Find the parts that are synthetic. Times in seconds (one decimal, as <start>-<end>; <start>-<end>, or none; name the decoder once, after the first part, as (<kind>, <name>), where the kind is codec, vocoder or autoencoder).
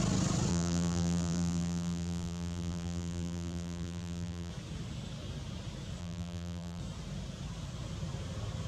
0.5-4.5 (vocoder, BigVGAN v2); 6.0-6.8